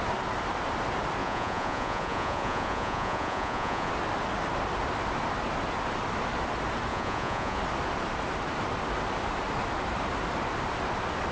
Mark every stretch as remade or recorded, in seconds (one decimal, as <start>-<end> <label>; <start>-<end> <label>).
0.0-1.2 recorded; 1.2-3.9 remade; 3.9-6.9 recorded; 6.9-7.6 remade; 7.6-11.3 recorded